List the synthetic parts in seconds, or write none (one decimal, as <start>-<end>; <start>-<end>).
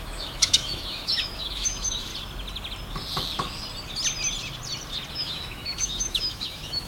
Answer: 0.0-2.1; 5.1-6.9